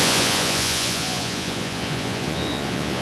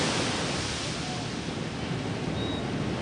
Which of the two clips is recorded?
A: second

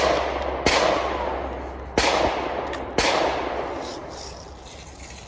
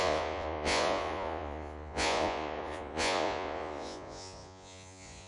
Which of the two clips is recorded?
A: first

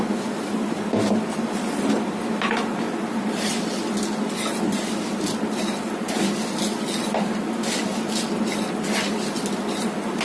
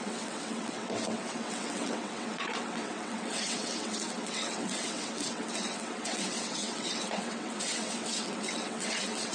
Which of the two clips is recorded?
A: first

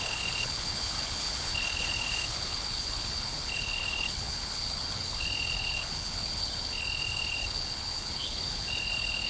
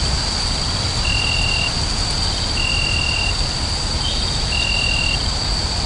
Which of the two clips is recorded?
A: second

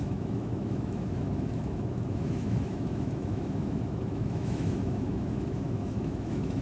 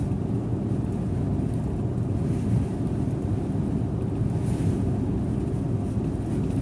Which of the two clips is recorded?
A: second